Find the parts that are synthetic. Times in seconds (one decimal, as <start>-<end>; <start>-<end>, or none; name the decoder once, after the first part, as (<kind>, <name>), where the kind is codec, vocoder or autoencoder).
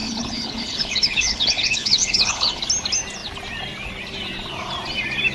0.0-2.6 (codec, HILCodec)